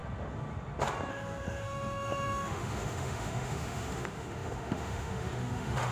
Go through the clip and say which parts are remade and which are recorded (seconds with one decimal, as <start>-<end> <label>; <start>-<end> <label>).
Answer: 0.0-1.1 recorded; 1.1-5.9 remade